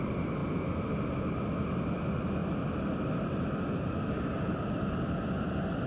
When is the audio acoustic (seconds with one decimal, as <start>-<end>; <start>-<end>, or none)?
0.0-5.9